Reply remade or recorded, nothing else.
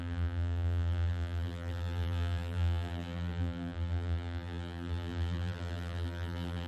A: remade